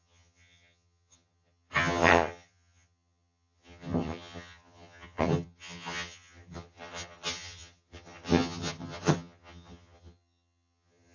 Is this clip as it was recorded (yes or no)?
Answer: no